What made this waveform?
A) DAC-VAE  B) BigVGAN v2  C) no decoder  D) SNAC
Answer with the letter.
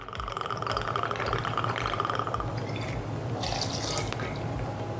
C